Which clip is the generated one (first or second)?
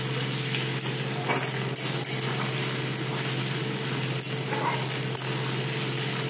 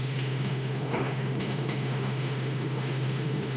second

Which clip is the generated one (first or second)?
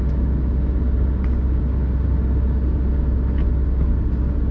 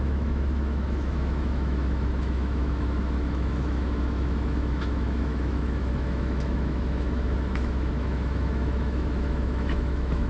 second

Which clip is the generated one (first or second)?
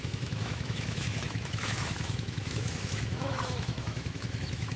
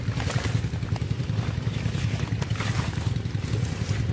first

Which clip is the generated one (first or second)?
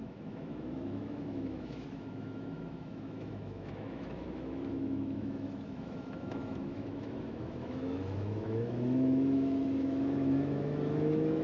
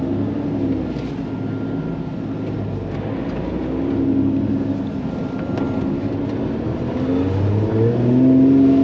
first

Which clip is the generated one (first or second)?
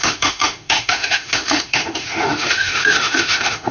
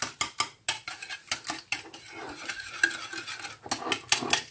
first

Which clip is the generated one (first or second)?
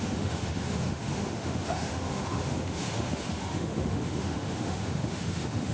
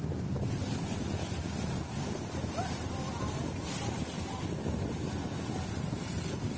first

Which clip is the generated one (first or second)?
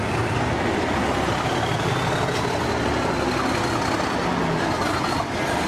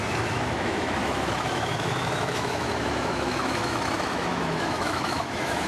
second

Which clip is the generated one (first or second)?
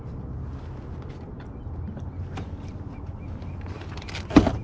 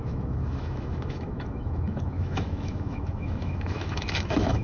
second